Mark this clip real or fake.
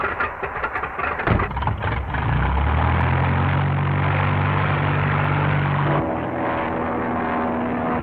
real